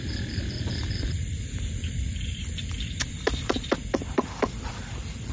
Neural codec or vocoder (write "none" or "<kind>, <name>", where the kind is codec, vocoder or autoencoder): vocoder, BigVGAN v2